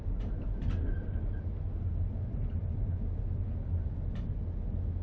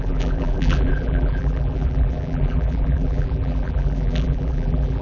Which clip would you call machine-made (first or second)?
second